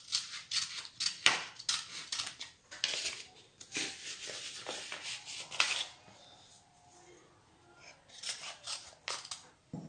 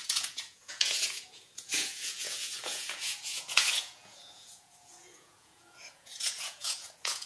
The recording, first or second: first